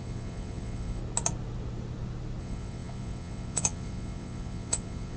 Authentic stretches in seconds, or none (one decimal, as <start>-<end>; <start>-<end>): 1.0-2.4